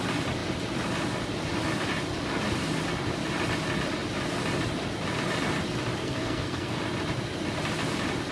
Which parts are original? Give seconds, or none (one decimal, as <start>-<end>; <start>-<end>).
0.0-6.0; 6.8-8.3